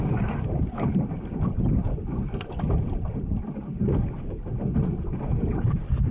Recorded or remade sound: remade